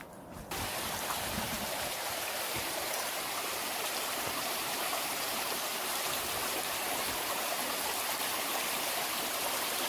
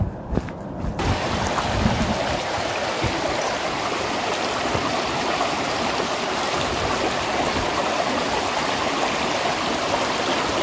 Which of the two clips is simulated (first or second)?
first